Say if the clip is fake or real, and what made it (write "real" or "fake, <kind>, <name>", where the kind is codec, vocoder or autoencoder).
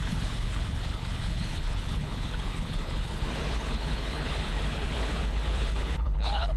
fake, codec, HILCodec